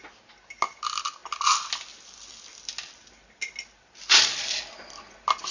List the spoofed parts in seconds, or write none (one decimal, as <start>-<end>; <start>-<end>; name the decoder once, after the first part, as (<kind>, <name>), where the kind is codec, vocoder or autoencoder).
none